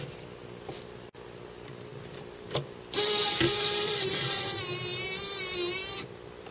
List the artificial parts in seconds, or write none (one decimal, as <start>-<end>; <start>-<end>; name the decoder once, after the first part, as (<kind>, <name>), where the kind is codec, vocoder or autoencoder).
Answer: 1.9-4.7 (vocoder, BigVGAN v2); 5.8-6.5